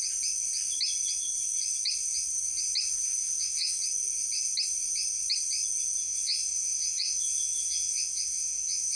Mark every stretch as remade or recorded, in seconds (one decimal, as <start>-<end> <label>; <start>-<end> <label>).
0.0-3.2 recorded; 3.2-3.8 remade; 3.8-6.0 recorded; 6.0-9.0 remade